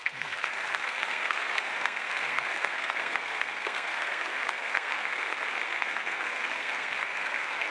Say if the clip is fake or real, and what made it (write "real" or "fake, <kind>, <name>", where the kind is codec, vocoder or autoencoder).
fake, codec, SNAC